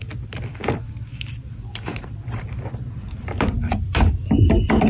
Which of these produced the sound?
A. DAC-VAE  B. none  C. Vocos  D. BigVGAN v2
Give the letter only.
D